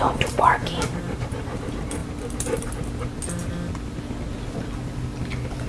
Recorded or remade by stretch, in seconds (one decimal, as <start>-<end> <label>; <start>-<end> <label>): 0.0-2.0 remade; 2.0-5.7 recorded